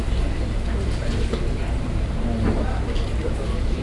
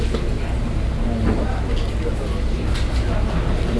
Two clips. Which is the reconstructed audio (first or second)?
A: first